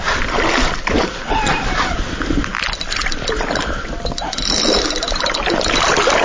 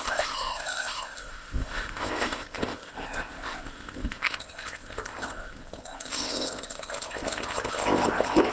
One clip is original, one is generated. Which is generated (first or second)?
second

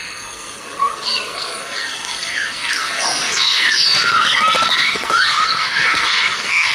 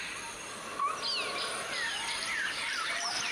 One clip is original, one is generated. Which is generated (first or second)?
first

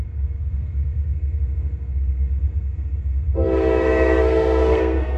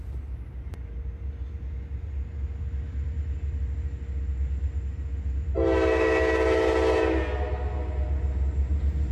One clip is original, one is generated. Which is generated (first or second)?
first